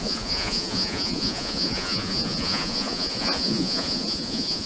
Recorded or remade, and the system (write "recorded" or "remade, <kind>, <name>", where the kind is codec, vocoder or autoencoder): remade, vocoder, Vocos